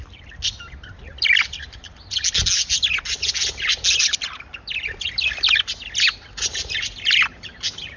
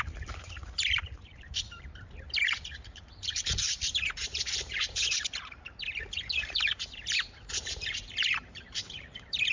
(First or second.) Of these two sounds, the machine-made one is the second